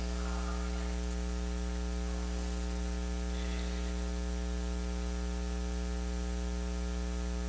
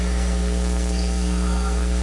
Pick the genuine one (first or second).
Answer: first